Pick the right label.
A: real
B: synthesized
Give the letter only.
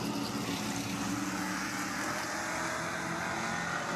A